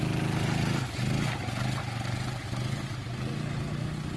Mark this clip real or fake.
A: real